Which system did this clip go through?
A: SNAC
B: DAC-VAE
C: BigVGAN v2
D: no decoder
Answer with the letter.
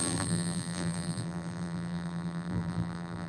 C